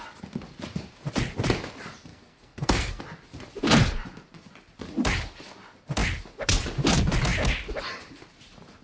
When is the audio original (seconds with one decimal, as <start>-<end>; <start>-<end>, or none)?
0.0-2.1; 3.0-8.8